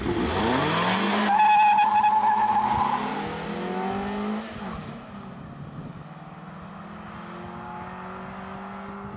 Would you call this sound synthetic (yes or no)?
no